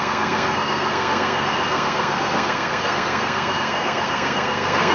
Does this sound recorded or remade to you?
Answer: remade